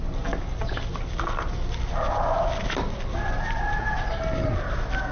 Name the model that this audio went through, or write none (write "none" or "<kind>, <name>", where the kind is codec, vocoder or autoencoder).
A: none